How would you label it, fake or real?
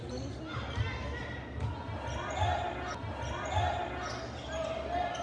real